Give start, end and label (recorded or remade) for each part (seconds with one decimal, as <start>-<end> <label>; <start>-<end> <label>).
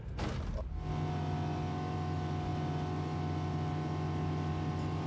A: 0.0-5.1 recorded